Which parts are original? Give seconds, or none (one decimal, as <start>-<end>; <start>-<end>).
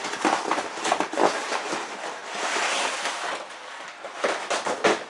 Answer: 0.0-5.1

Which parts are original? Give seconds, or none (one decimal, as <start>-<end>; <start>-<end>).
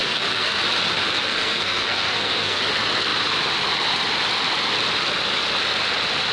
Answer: 0.6-1.0; 2.6-6.3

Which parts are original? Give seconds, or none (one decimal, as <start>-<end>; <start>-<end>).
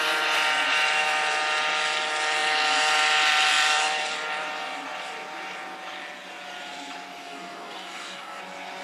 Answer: 0.0-7.2; 8.4-8.8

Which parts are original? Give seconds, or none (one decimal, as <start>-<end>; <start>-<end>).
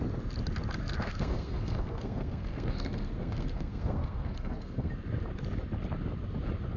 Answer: 0.0-0.8; 4.9-6.8